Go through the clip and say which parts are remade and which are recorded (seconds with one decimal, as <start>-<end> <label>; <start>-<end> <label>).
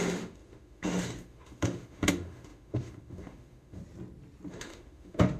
0.0-3.8 remade; 3.8-4.5 recorded; 4.5-5.4 remade